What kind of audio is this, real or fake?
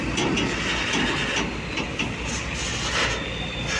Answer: real